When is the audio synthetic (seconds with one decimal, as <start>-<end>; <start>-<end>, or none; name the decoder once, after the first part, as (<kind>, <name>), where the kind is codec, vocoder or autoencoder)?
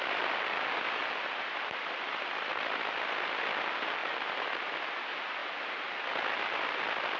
1.0-3.4 (vocoder, BigVGAN v2); 4.0-5.0